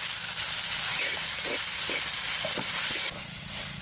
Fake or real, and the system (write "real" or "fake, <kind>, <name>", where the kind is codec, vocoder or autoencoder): real